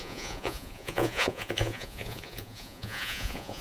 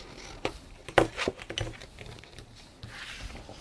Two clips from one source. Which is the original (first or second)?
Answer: second